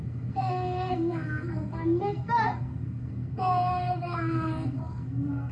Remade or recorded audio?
remade